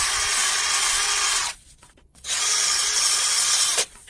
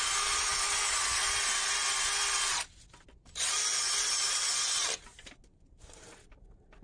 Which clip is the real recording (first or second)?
second